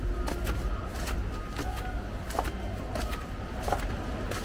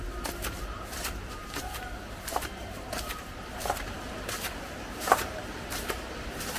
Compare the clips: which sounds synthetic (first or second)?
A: second